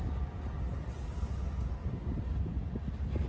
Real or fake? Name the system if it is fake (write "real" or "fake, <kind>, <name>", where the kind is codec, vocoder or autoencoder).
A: real